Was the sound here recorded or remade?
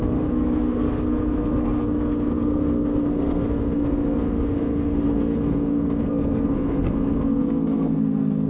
remade